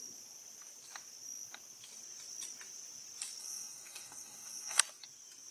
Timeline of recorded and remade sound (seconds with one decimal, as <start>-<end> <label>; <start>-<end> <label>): 0.0-3.4 recorded; 3.4-4.8 remade; 4.8-5.5 recorded